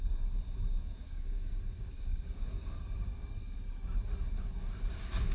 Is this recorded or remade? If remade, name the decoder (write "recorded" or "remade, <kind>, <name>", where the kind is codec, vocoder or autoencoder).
remade, codec, DAC